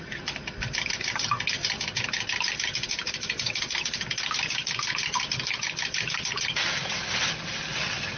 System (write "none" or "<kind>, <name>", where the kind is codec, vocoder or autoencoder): none